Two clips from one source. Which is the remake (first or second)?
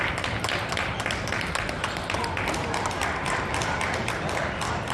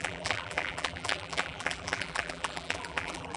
second